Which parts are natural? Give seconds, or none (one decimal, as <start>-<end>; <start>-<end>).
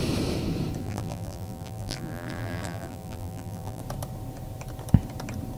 0.0-0.8; 3.8-5.6